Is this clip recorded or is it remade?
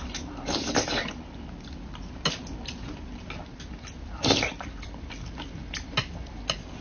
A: recorded